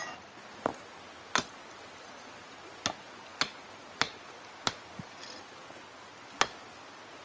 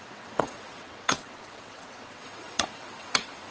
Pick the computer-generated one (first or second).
second